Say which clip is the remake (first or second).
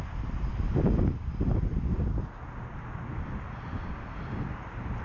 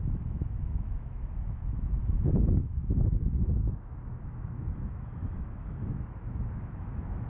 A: second